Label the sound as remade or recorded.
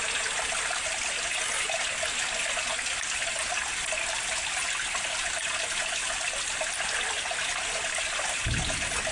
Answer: recorded